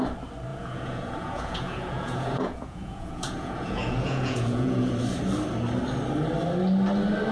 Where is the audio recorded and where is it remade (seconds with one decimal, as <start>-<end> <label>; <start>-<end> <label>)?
0.0-0.5 recorded; 0.5-4.9 remade; 4.9-7.3 recorded